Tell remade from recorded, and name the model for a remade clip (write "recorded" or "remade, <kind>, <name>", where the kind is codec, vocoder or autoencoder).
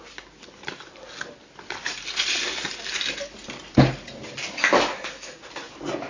recorded